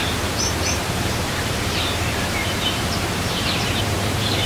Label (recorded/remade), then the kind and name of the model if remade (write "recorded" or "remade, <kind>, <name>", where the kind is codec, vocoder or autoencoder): remade, vocoder, BigVGAN v2